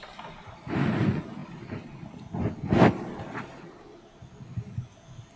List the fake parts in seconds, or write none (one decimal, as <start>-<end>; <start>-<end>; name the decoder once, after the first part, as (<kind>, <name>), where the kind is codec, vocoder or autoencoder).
none